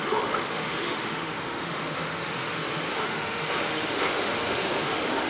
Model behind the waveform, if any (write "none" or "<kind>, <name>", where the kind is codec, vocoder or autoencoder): autoencoder, DAC-VAE